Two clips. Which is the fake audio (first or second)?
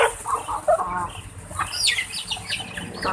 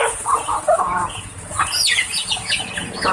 second